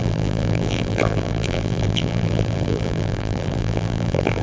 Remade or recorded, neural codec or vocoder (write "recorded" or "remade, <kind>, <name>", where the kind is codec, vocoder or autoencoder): remade, vocoder, BigVGAN v2